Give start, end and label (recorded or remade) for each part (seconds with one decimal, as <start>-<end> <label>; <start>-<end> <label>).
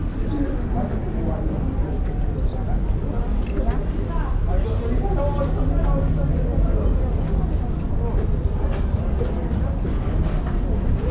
0.0-11.1 recorded